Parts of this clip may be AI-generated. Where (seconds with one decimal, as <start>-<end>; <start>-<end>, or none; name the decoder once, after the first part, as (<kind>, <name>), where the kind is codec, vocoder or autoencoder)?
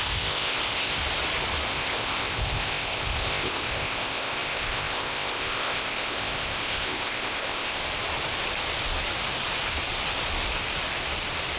0.0-1.0 (codec, ZipCodec); 1.7-7.8